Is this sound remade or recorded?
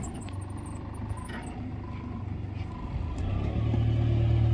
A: recorded